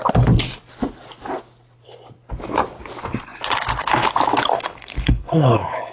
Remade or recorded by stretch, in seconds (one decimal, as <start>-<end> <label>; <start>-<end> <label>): 0.0-4.5 recorded; 4.5-5.9 remade